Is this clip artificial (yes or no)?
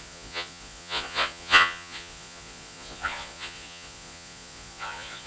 yes